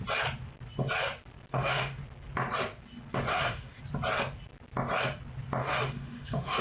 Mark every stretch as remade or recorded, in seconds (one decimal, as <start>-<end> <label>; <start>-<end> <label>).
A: 0.0-1.5 recorded; 1.5-2.0 remade; 2.0-3.3 recorded; 3.3-3.8 remade; 3.8-5.6 recorded; 5.6-6.6 remade